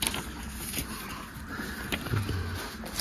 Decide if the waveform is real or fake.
real